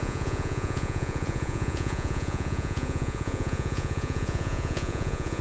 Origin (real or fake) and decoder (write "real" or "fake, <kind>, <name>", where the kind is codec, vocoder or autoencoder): fake, vocoder, Vocos